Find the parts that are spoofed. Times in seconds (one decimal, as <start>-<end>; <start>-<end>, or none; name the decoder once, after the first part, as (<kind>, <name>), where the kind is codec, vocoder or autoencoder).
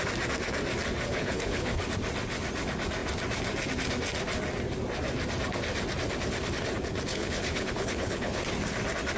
1.1-1.8 (codec, HILCodec); 7.1-8.4